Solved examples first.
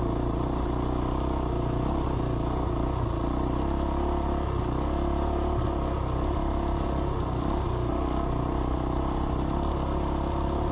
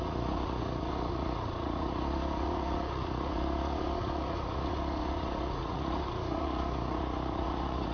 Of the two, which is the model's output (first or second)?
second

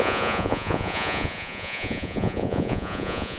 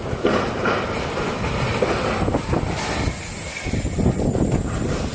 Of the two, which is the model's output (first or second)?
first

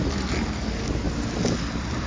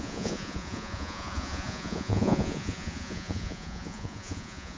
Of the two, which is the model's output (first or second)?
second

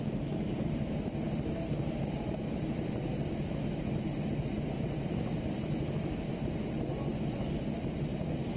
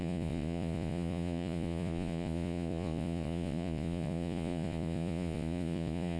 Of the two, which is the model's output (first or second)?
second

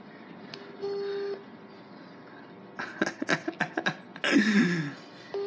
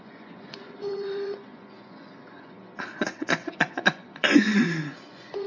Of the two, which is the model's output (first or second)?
second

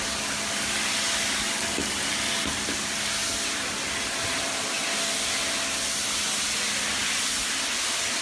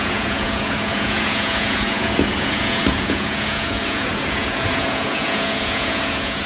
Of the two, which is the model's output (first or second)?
second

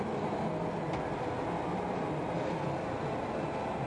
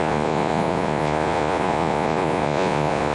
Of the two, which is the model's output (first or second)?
second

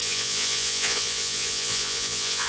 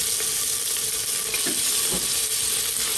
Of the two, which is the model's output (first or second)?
first